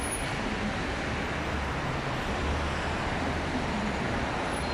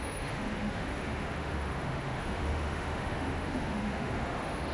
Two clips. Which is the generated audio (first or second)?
second